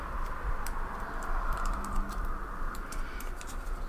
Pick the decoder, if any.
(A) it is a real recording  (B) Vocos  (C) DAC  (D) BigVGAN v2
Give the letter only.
D